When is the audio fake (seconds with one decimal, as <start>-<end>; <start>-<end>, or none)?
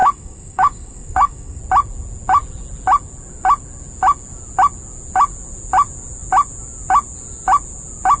0.0-1.6